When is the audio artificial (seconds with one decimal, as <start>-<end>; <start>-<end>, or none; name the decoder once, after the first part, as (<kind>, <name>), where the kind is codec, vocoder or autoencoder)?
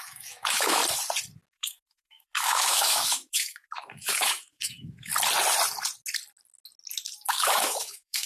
0.0-0.8 (autoencoder, DAC-VAE); 1.5-5.1; 7.3-8.3